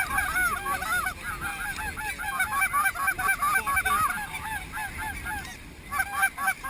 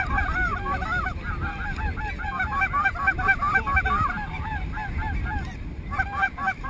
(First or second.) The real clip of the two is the first